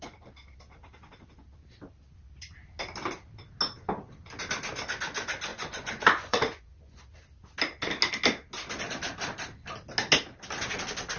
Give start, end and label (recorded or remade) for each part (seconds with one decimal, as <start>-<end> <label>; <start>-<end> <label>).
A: 0.0-5.5 recorded; 5.5-7.0 remade; 7.0-11.2 recorded